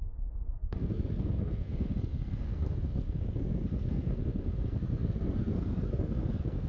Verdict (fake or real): fake